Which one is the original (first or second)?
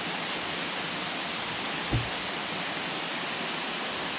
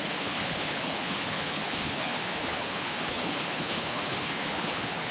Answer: first